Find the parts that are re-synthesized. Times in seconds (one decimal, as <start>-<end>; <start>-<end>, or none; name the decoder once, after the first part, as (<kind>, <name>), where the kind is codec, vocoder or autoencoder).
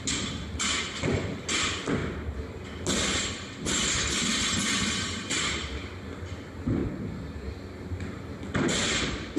none